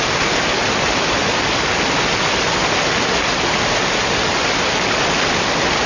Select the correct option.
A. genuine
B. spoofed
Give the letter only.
A